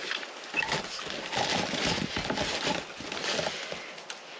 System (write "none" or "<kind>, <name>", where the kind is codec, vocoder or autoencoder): none